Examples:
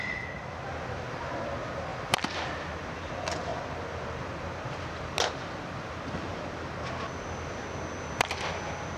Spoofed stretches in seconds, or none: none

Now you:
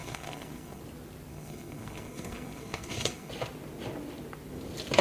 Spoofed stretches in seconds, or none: 0.0-0.8 (codec, SNAC); 1.3-3.3

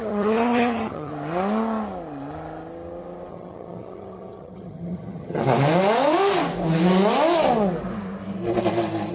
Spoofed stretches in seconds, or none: 0.0-1.1 (vocoder, HiFi-GAN); 3.3-5.4

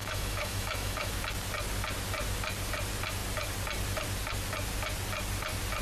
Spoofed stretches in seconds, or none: 0.0-1.1 (autoencoder, DAC-VAE)

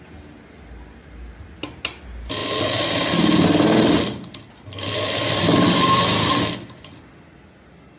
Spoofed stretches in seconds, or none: none

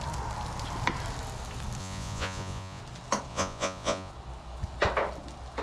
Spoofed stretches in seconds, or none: 1.8-2.8 (vocoder, Vocos); 3.3-4.1